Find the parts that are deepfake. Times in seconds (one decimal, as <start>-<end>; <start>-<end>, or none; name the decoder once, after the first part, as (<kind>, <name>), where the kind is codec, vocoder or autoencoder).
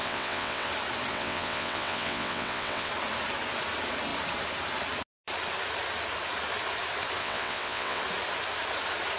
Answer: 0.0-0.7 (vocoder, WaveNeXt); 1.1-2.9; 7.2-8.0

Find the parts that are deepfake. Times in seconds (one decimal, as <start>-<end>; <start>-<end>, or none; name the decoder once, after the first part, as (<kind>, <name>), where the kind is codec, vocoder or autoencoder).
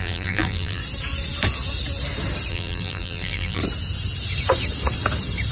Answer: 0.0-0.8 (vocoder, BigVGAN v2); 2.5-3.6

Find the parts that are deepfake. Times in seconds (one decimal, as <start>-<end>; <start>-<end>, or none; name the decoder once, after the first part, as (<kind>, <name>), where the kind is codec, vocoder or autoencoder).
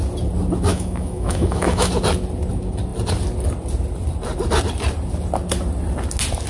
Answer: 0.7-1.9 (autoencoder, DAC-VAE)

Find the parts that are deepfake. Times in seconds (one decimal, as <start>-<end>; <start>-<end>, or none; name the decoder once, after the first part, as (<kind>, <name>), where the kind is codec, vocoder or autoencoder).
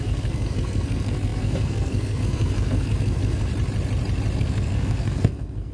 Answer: 0.0-3.5 (codec, SNAC); 4.4-5.7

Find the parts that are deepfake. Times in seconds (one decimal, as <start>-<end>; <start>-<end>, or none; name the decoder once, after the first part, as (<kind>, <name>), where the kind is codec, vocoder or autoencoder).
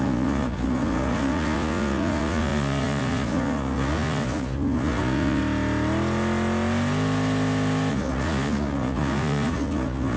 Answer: 0.0-5.4 (vocoder, Vocos); 7.9-10.2